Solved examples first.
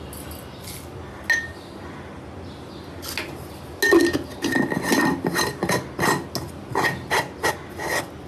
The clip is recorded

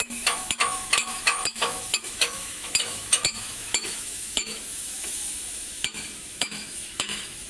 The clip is remade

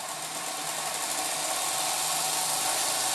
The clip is recorded